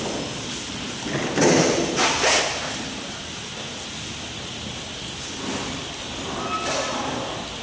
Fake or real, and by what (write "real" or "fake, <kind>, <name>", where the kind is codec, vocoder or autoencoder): real